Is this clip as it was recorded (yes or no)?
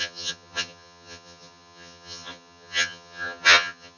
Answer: no